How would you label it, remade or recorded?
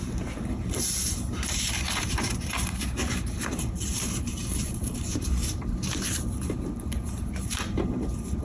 remade